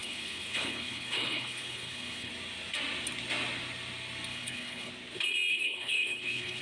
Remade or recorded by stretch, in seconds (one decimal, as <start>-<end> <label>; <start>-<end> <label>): 0.0-2.3 remade; 2.3-4.3 recorded; 4.3-4.9 remade; 4.9-5.5 recorded; 5.5-6.6 remade